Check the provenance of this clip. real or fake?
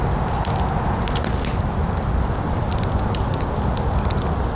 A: real